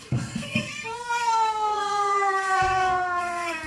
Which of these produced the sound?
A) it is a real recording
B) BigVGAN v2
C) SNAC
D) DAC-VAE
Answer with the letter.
C